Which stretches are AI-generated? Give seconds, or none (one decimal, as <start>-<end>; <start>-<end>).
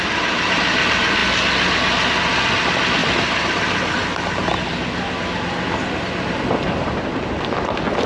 0.0-1.2; 2.2-4.0; 5.8-8.1